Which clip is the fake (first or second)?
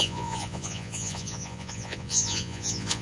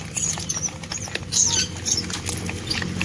first